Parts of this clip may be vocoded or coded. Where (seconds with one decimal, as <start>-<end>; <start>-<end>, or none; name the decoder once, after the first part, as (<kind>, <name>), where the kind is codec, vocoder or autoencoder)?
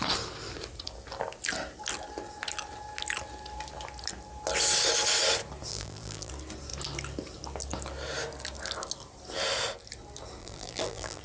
5.7-6.3 (vocoder, BigVGAN v2); 10.4-11.2